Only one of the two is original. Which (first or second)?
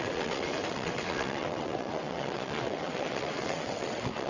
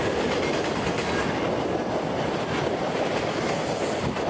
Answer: second